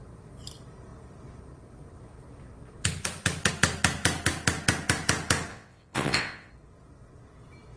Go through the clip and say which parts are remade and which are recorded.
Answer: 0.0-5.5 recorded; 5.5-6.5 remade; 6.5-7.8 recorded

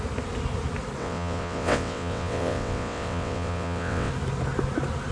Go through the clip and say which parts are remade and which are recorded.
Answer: 0.0-1.0 recorded; 1.0-4.1 remade; 4.1-5.1 recorded